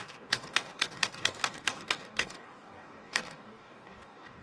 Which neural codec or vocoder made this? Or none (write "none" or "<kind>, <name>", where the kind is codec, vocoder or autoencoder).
codec, DAC